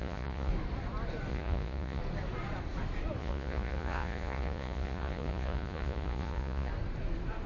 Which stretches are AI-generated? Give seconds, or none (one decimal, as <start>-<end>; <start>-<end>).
0.0-0.5; 1.3-2.0; 3.2-6.7